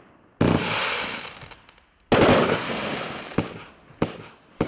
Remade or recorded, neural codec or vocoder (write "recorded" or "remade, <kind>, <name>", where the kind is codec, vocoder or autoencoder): recorded